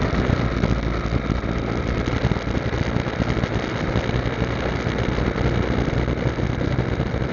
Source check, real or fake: real